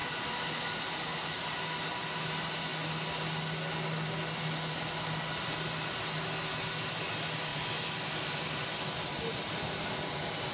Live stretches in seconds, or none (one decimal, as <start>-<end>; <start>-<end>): 0.0-10.5